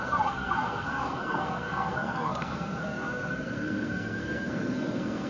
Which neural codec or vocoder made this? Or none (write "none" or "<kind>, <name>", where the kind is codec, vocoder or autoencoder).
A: codec, SNAC